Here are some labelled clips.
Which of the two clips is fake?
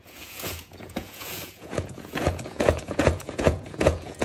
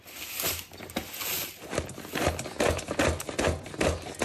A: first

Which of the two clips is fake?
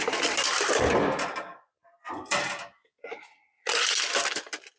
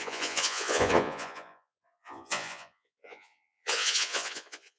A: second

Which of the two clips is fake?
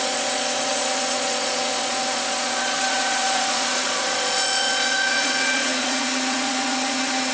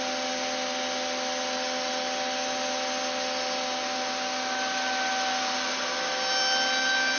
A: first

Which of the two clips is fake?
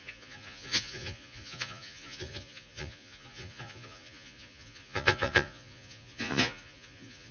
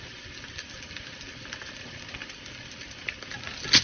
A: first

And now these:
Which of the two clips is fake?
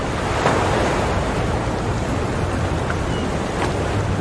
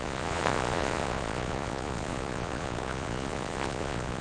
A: second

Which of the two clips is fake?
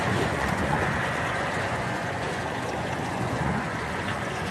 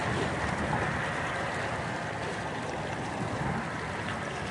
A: first